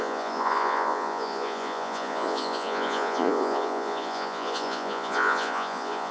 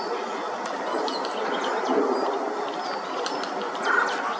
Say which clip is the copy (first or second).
first